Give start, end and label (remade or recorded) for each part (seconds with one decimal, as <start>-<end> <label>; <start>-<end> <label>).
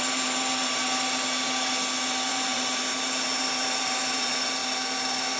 0.0-1.7 remade; 1.7-2.3 recorded; 2.3-5.4 remade